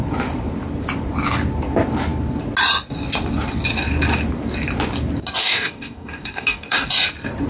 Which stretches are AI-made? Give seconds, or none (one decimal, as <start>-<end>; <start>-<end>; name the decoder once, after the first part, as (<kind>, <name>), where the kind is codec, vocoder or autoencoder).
5.4-6.9 (codec, DAC)